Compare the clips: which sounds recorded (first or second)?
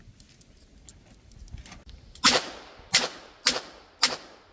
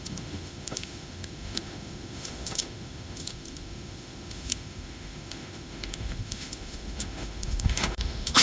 first